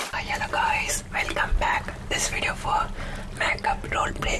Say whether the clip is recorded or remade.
recorded